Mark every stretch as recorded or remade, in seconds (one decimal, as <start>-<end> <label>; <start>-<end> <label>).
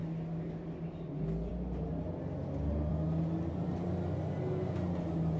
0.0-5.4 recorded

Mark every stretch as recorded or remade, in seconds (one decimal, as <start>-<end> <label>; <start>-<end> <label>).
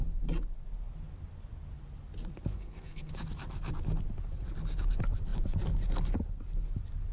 0.0-2.5 recorded; 2.5-3.1 remade; 3.1-7.1 recorded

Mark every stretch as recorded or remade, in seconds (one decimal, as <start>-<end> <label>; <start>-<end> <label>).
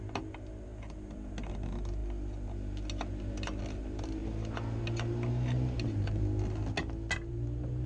0.0-7.9 recorded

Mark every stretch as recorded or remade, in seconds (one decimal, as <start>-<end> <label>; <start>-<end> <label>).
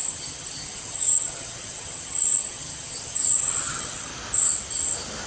0.0-4.1 remade; 4.1-5.3 recorded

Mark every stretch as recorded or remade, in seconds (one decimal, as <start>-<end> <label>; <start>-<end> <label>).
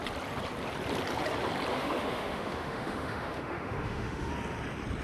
0.0-1.7 recorded; 1.7-4.3 remade; 4.3-5.0 recorded